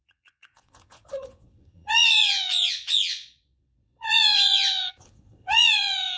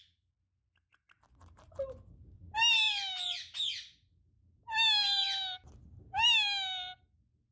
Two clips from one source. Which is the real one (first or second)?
second